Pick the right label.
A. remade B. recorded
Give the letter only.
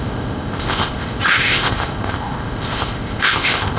A